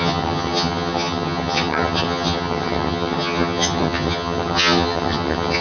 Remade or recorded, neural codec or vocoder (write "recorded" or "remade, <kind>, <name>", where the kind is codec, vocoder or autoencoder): remade, vocoder, HiFi-GAN